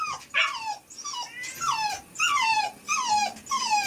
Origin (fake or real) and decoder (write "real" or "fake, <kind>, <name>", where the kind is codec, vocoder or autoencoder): real